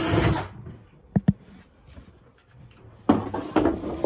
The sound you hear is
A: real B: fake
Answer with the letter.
A